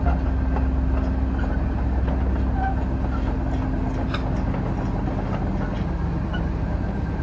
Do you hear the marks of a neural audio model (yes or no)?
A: no